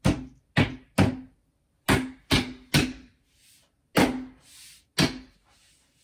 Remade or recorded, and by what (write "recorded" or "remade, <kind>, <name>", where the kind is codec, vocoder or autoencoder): recorded